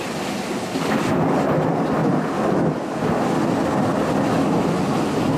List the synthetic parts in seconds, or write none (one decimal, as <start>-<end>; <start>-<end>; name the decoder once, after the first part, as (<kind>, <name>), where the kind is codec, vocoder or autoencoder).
none